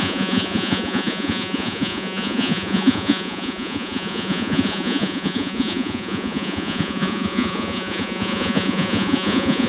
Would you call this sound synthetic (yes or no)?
yes